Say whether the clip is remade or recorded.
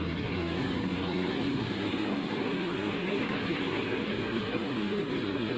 remade